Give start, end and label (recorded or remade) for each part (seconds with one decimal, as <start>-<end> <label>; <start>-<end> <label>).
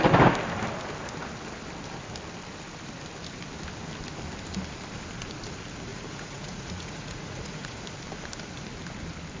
0.0-5.9 recorded; 5.9-7.8 remade; 7.8-9.4 recorded